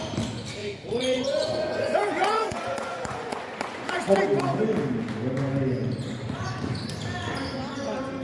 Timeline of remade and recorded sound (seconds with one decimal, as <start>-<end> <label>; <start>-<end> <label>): 0.0-0.6 recorded; 0.6-4.2 remade; 4.2-8.2 recorded